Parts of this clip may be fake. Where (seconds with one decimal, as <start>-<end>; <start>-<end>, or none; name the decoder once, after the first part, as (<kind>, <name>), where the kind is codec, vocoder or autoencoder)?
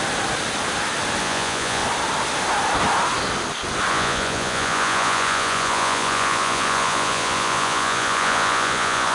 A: 1.2-1.8 (vocoder, Vocos); 3.9-9.1